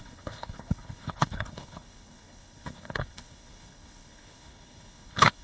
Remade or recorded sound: remade